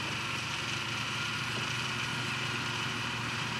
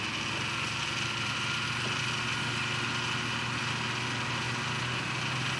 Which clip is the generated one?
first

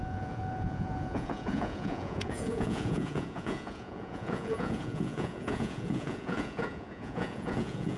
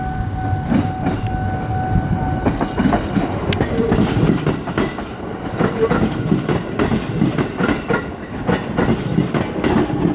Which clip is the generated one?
first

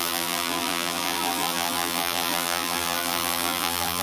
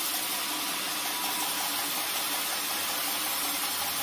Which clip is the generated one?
first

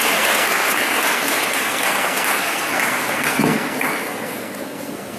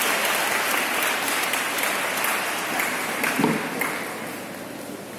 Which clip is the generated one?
first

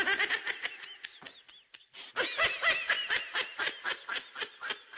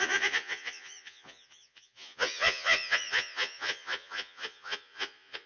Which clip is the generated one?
second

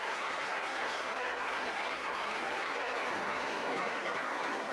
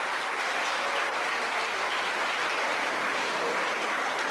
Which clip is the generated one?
first